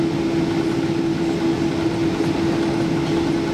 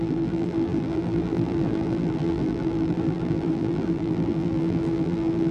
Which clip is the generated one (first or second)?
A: second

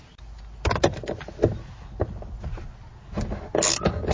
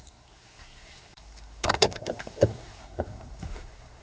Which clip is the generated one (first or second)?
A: second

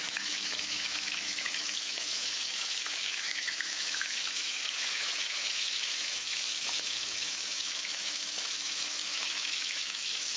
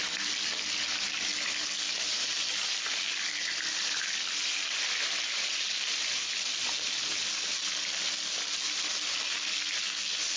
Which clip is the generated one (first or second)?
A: first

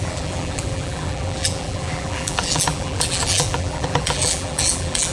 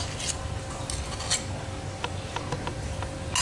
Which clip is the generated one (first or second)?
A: first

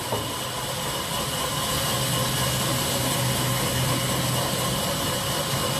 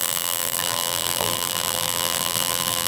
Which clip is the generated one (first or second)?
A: second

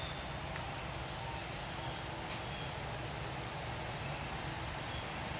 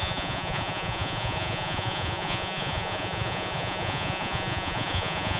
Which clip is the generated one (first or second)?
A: second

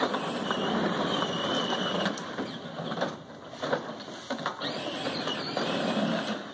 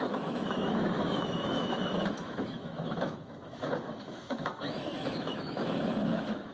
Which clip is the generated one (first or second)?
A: second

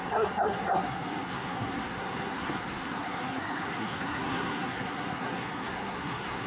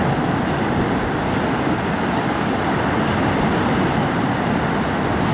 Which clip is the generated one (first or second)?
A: first